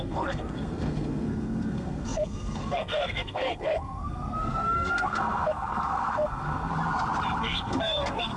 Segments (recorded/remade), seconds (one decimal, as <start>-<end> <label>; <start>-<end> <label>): 0.0-6.7 remade; 6.7-7.4 recorded; 7.4-8.4 remade